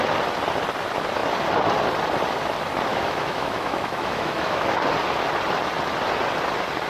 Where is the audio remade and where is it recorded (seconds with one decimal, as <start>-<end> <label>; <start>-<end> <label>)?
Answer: 0.0-2.9 recorded; 2.9-4.7 remade; 4.7-6.9 recorded